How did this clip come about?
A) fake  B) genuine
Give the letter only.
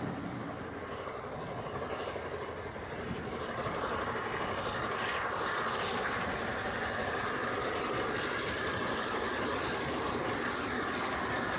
B